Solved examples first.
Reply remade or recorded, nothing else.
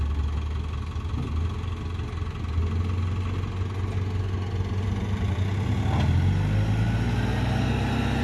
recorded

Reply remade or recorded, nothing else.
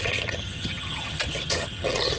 remade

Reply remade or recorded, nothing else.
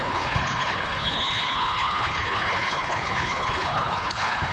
remade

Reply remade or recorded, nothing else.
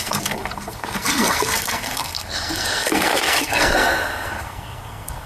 remade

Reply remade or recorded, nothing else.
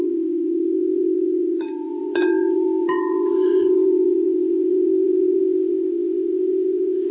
remade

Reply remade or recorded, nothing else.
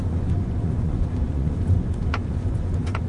remade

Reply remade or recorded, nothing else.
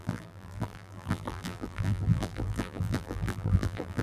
remade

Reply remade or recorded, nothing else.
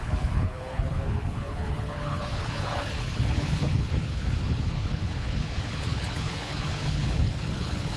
remade